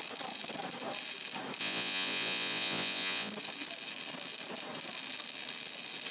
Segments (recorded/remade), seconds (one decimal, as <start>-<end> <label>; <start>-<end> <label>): 0.0-1.6 recorded; 1.6-3.3 remade; 3.3-6.1 recorded